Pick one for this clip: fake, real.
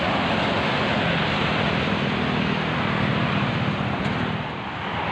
real